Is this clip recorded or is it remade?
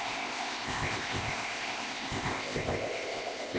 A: remade